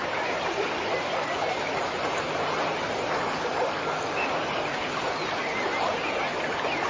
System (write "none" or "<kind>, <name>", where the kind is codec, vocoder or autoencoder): none